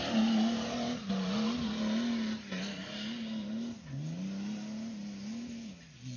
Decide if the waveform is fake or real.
real